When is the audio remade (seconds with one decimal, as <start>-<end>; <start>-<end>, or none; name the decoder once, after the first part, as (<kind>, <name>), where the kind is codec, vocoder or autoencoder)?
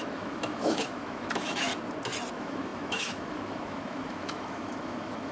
0.0-1.7 (autoencoder, DAC-VAE); 2.3-5.3